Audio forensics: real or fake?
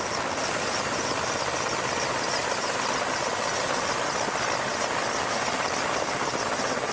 real